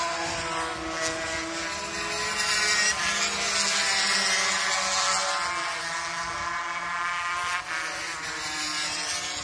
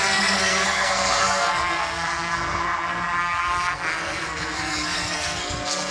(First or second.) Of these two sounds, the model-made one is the second